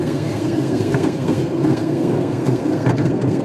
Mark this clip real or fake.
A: fake